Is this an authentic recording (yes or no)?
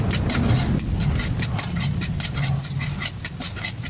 yes